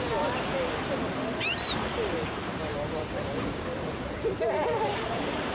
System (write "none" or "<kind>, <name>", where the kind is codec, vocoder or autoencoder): vocoder, BigVGAN v2